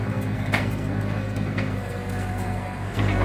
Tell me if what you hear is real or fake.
fake